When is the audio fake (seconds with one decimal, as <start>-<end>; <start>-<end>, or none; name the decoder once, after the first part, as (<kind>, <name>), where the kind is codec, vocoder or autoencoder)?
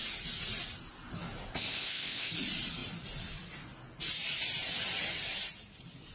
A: 1.5-2.3 (codec, ZipCodec)